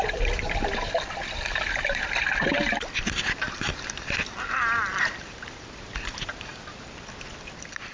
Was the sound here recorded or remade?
recorded